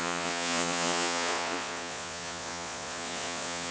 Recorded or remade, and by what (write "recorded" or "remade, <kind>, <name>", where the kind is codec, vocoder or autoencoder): remade, vocoder, Vocos